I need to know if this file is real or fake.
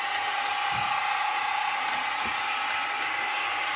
fake